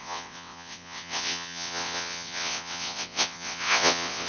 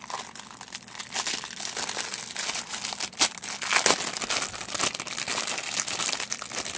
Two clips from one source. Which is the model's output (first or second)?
first